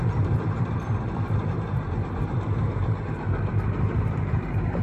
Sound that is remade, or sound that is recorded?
remade